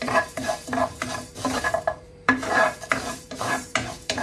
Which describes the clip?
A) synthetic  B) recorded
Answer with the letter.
A